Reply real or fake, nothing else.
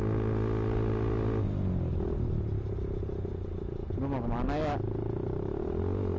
real